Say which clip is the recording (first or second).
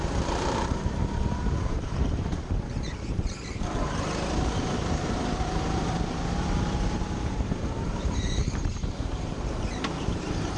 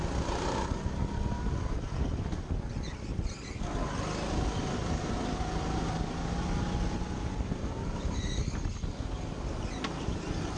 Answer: second